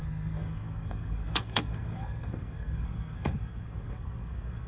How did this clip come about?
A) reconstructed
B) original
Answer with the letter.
A